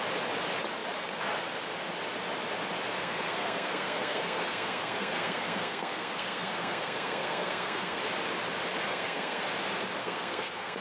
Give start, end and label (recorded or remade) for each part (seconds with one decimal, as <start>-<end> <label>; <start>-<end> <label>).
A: 0.0-2.9 recorded; 2.9-8.0 remade; 8.0-8.9 recorded; 8.9-9.4 remade; 9.4-10.0 recorded; 10.0-10.8 remade